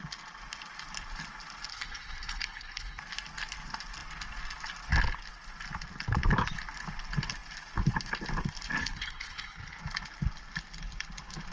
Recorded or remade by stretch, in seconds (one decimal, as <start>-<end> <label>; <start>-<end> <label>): 0.0-1.7 recorded; 1.7-3.0 remade; 3.0-8.8 recorded; 8.8-9.8 remade; 9.8-11.5 recorded